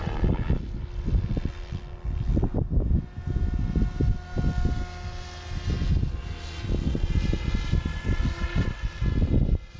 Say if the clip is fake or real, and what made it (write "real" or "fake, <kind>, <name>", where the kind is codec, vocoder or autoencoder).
real